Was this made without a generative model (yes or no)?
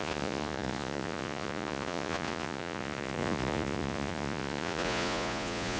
no